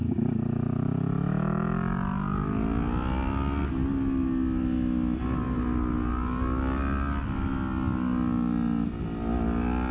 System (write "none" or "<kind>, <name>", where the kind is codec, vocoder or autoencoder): none